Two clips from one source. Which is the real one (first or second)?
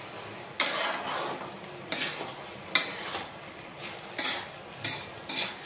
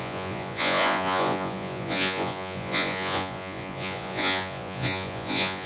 first